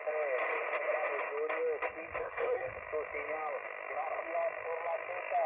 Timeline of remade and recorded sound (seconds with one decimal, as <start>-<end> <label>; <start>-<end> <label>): 0.0-2.2 recorded; 2.2-2.7 remade; 2.7-5.5 recorded